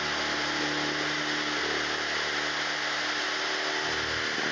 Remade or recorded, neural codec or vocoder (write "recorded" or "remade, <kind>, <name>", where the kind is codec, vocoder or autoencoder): recorded